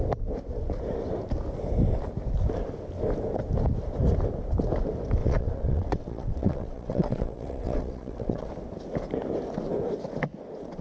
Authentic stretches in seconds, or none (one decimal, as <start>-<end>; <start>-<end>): 0.0-5.2; 8.5-10.8